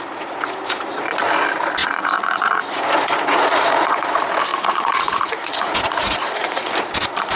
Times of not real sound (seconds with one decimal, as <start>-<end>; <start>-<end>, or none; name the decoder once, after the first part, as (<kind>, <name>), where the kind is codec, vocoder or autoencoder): 1.8-4.1 (vocoder, Vocos); 4.5-6.7